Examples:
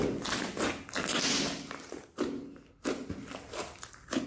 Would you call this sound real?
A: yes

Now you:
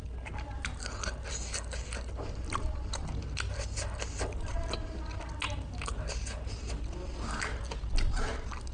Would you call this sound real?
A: yes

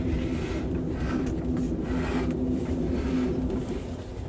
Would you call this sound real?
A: no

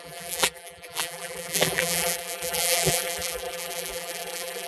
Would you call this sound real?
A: no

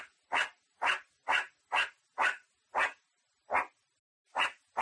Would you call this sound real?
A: yes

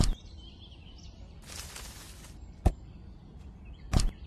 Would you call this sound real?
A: yes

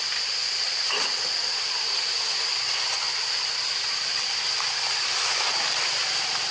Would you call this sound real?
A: yes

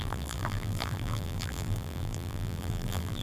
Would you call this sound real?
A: no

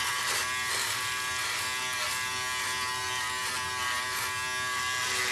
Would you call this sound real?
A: yes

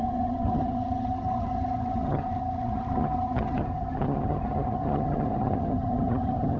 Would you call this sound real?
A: no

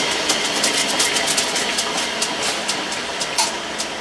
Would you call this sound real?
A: yes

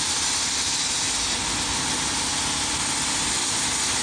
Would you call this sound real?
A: yes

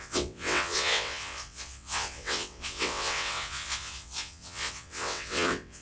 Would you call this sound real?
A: no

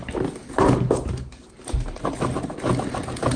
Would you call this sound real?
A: yes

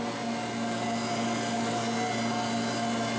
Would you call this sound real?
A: yes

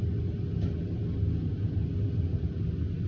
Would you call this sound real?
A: yes